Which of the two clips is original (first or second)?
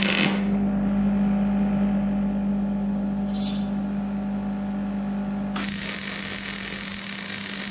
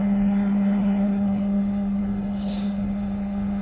first